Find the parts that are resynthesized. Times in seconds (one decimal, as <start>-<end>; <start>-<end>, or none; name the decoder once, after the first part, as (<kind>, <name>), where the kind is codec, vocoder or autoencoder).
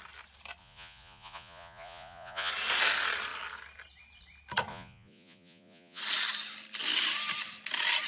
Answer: 0.6-2.5 (vocoder, Vocos); 4.7-6.0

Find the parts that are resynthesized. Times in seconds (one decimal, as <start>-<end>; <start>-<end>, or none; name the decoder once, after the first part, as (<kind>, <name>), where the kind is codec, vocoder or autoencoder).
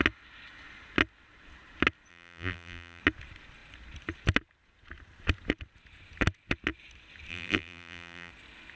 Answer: 2.1-3.0 (vocoder, BigVGAN v2); 7.3-8.3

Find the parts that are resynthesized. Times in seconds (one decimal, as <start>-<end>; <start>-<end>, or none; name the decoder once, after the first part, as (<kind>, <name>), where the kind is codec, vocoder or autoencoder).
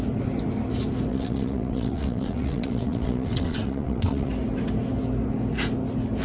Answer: 1.1-4.3 (vocoder, WaveNeXt)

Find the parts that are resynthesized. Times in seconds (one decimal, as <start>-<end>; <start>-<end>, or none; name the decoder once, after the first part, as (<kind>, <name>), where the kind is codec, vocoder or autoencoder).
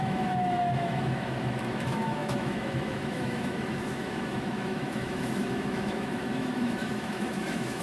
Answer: 0.0-7.8 (autoencoder, DAC-VAE)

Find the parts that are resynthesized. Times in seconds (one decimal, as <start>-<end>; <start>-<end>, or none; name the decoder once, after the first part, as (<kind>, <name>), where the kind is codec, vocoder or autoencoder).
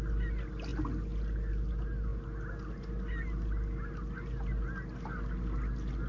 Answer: none